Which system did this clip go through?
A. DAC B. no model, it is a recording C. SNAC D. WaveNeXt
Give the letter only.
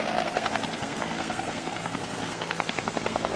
C